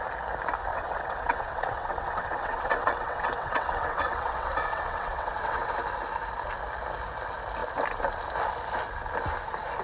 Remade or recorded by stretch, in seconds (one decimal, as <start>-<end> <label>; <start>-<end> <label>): 0.0-0.7 recorded; 0.7-5.7 remade; 5.7-9.8 recorded